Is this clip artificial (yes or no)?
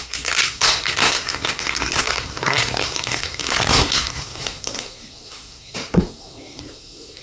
yes